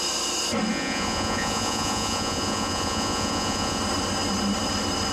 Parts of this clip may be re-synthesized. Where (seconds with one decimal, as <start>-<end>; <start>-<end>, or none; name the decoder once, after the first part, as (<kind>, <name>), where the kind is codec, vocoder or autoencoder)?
0.7-3.8 (vocoder, Vocos)